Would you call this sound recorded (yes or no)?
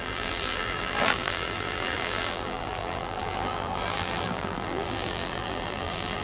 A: no